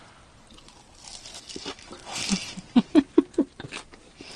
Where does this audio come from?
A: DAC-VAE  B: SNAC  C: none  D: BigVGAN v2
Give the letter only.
C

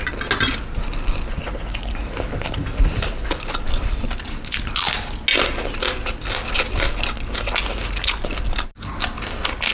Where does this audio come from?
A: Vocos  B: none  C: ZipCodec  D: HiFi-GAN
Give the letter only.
B